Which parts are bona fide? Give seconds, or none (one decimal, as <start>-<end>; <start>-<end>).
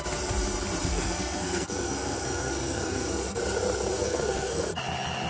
0.0-0.8; 3.4-3.9; 4.8-5.3